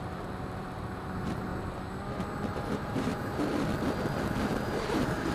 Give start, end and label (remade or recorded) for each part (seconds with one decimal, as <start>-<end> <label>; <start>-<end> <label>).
0.0-1.5 remade; 1.5-2.5 recorded; 2.5-3.1 remade; 3.1-4.4 recorded; 4.4-5.3 remade